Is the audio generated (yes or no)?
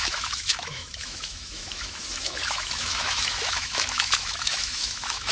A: yes